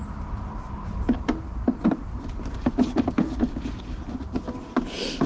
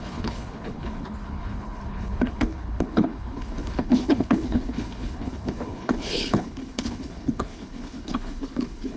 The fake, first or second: second